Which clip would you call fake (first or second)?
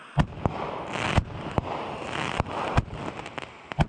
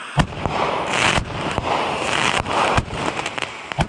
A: second